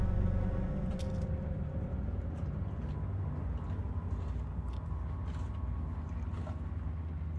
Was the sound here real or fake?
real